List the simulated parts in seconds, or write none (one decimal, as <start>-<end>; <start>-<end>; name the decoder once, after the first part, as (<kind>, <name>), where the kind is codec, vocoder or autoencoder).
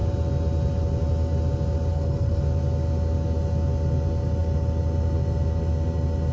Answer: 1.9-2.4 (codec, SNAC)